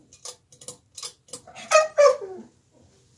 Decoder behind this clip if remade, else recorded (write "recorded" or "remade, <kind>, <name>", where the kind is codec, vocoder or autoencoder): recorded